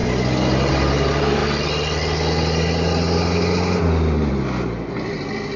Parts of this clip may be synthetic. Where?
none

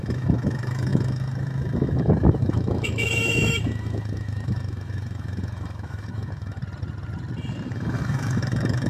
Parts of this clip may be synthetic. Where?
0.0-6.6 (autoencoder, DAC-VAE); 7.7-8.9

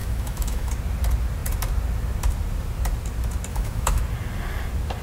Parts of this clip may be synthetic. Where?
0.0-0.7 (autoencoder, DAC-VAE); 3.5-4.0

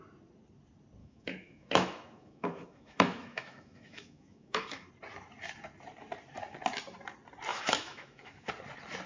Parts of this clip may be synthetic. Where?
1.0-4.9 (autoencoder, DAC-VAE); 7.5-8.5

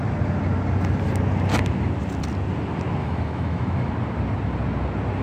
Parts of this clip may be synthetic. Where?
3.0-3.9 (autoencoder, DAC-VAE)